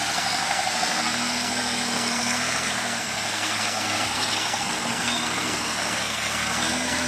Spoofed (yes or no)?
yes